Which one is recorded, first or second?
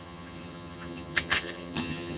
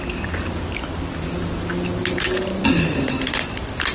second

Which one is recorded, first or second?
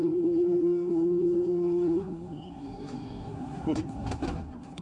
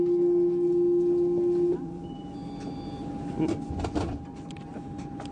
second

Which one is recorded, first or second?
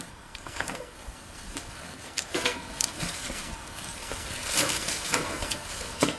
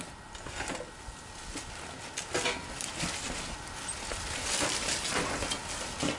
second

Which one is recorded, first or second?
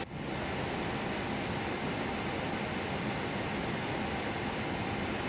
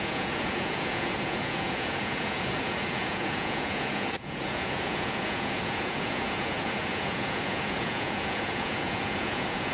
first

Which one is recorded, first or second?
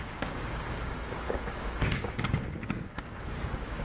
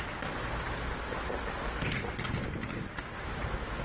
second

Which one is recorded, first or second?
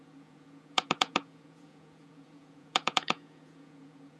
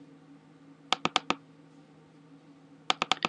second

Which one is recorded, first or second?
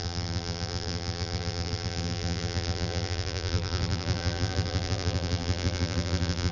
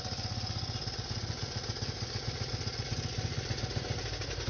second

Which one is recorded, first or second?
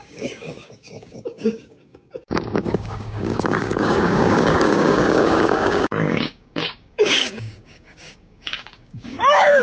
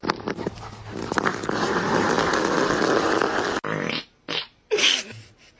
second